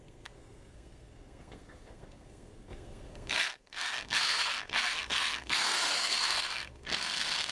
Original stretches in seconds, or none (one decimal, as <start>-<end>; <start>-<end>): none